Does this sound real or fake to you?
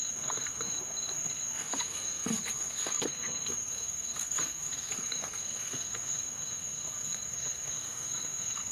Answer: fake